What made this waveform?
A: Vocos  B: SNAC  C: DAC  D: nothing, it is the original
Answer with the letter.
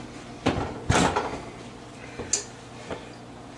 D